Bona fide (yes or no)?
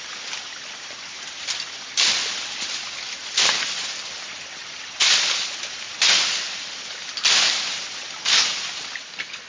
yes